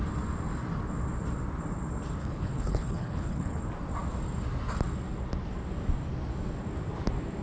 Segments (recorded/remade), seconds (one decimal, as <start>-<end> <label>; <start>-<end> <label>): 0.0-2.2 recorded; 2.2-3.6 remade; 3.6-7.4 recorded

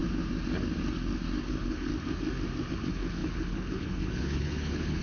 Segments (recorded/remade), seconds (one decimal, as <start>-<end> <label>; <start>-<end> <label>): 0.0-1.5 recorded; 1.5-1.9 remade; 1.9-2.7 recorded; 2.7-5.0 remade

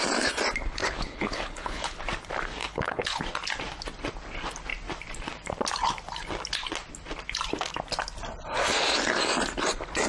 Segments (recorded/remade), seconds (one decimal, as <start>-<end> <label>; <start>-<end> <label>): 0.0-0.8 recorded; 0.8-2.0 remade; 2.0-2.6 recorded; 2.6-3.2 remade; 3.2-10.1 recorded

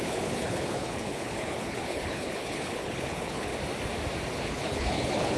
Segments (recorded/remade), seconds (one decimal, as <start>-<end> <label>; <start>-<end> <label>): 0.0-3.5 remade; 3.5-4.3 recorded; 4.3-5.4 remade